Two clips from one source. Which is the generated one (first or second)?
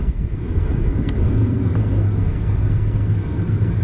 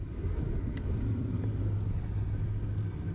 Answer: first